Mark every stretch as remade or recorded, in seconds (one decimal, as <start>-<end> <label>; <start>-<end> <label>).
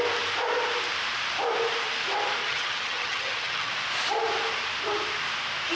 0.0-2.4 recorded; 2.4-3.7 remade; 3.7-5.8 recorded